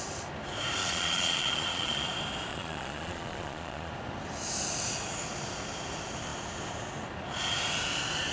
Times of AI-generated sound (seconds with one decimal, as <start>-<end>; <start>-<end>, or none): 0.8-2.1; 2.5-3.9